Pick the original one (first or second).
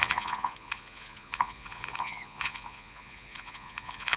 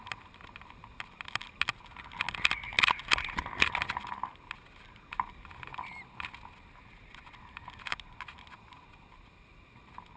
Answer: second